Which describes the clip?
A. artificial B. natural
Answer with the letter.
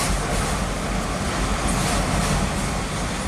B